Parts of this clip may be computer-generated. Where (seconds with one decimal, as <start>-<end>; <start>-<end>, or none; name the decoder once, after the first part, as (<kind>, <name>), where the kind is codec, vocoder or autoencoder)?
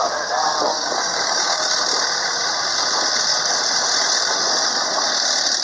0.7-1.7 (codec, DAC)